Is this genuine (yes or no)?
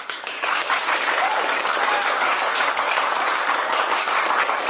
no